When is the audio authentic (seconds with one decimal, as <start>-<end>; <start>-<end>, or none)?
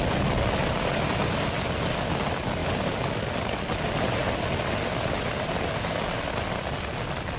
0.0-7.4